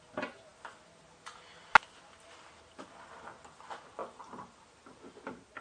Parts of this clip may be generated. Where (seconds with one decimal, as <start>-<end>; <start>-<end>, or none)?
none